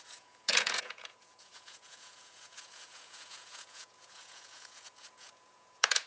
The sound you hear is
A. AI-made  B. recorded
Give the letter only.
A